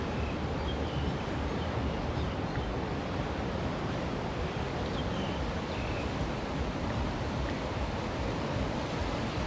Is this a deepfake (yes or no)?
no